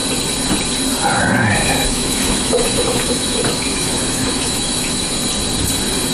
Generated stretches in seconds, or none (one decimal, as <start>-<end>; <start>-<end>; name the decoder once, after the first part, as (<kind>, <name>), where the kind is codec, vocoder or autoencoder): 1.6-5.2 (autoencoder, DAC-VAE)